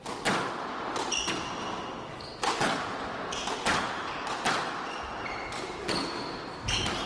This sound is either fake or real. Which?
real